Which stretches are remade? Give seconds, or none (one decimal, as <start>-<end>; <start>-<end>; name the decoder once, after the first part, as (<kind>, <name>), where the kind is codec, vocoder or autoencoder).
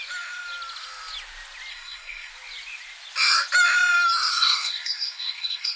1.7-2.3 (codec, SNAC); 4.3-5.8